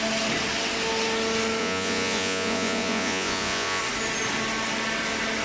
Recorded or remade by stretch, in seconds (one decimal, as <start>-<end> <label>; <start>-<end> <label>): 0.0-1.6 recorded; 1.6-3.8 remade; 3.8-5.4 recorded